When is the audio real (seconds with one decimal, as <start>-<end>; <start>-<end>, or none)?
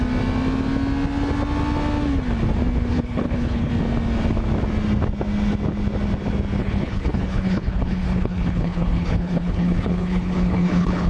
0.0-2.9; 3.7-6.6